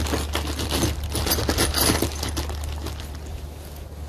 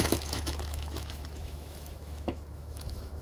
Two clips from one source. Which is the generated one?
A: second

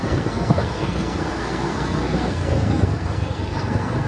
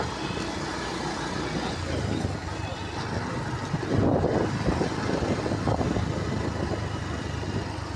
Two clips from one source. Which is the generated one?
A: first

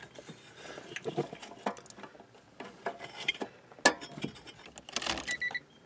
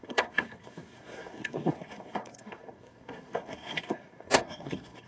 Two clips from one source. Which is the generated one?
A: second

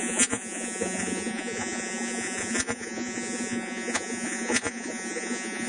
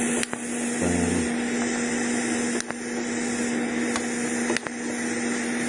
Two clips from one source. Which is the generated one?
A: first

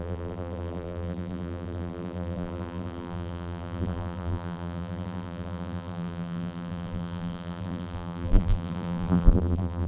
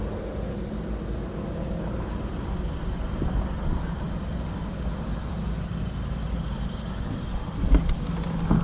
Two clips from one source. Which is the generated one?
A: first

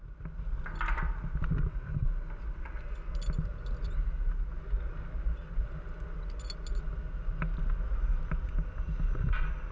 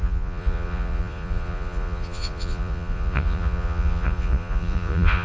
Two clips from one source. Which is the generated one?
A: second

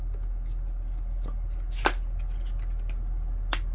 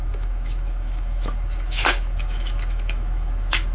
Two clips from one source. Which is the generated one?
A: second